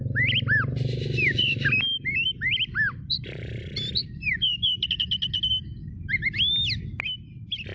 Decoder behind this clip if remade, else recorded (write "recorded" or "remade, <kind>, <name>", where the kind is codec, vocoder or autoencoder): recorded